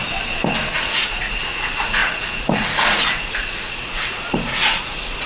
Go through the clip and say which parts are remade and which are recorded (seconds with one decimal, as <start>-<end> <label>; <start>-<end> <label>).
0.0-0.7 recorded; 0.7-5.3 remade